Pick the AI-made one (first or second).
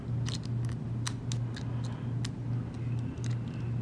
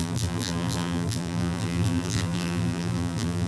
second